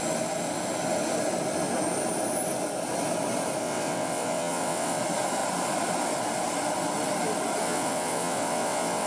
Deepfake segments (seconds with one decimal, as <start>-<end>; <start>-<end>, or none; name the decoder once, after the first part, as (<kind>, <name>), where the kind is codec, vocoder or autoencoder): 3.6-5.0 (vocoder, WaveNeXt); 7.6-9.1